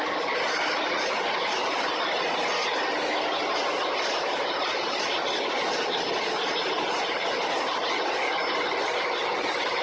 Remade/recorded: recorded